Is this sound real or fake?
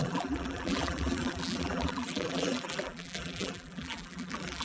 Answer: fake